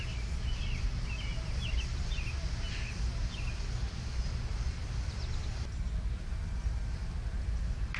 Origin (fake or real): real